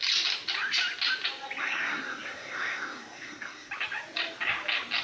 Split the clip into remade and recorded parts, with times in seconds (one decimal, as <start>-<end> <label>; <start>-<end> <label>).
0.0-1.6 recorded; 1.6-3.7 remade; 3.7-5.0 recorded